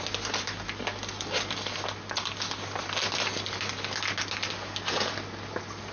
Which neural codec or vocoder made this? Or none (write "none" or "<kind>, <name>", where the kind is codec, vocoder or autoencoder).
none